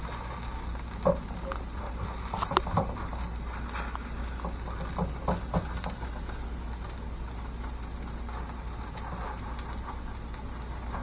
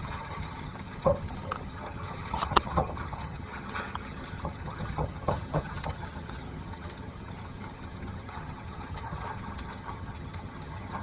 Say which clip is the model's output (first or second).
second